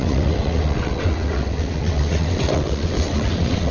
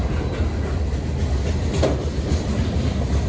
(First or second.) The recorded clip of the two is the second